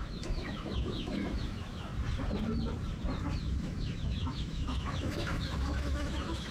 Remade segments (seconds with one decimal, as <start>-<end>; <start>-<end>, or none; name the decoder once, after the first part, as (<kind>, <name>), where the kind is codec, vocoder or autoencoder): 0.0-1.9 (autoencoder, DAC-VAE); 3.4-6.5